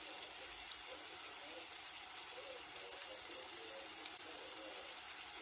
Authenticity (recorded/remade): recorded